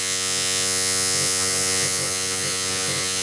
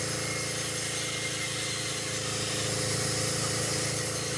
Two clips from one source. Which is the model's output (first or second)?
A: first